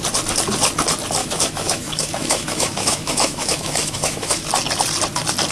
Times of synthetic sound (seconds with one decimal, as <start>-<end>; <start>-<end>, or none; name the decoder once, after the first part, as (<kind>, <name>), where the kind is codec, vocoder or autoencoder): 1.2-4.5 (autoencoder, DAC-VAE)